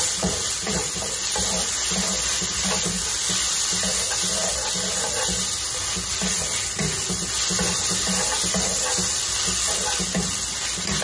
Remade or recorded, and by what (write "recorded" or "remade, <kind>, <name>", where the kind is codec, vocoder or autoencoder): recorded